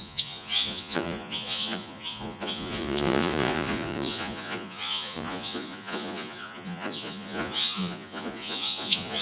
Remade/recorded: remade